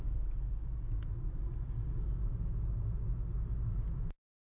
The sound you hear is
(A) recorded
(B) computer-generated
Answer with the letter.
A